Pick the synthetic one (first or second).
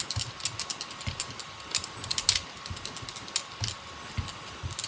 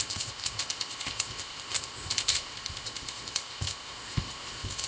second